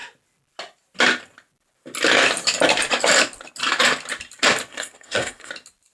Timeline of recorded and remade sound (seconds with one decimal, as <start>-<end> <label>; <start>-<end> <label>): 0.0-4.7 recorded; 4.7-5.5 remade; 5.5-5.9 recorded